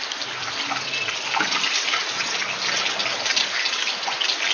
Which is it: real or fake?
real